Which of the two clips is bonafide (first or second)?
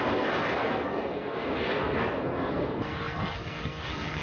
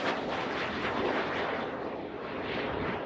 second